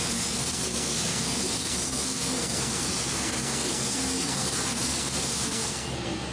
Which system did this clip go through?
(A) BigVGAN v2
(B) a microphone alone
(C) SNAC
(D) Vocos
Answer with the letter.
C